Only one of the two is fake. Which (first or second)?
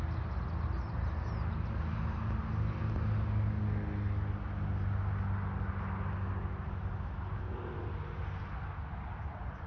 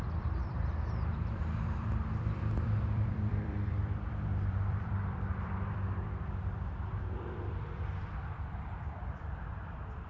second